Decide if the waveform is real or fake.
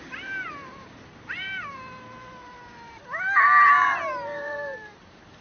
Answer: fake